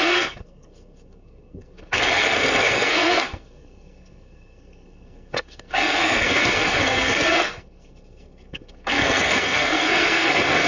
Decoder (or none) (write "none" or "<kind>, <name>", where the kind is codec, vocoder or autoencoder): codec, SNAC